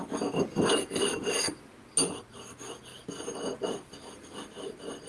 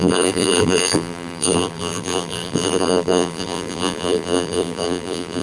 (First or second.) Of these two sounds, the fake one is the second